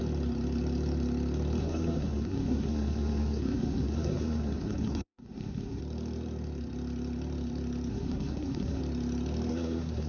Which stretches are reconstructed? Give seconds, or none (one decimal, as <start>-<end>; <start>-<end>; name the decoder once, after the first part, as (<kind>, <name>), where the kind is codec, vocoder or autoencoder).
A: 1.6-5.8 (codec, SNAC); 7.9-8.8; 9.5-10.1